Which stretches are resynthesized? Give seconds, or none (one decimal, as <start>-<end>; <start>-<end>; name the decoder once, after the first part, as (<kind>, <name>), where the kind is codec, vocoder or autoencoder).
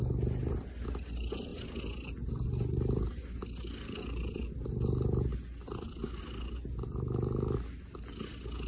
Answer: none